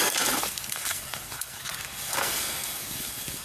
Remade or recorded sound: remade